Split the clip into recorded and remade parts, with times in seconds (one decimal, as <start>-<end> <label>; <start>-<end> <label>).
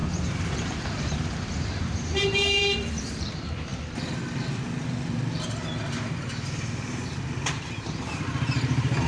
0.0-0.5 recorded; 0.5-3.7 remade; 3.7-7.5 recorded; 7.5-9.1 remade